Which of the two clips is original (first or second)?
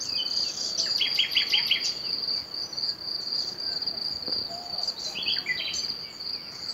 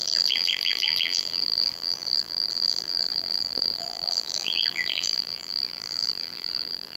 first